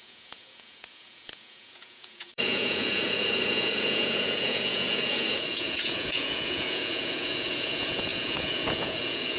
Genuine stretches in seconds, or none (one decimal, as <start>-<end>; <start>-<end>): none